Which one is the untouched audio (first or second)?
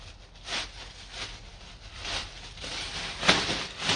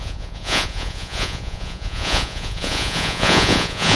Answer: first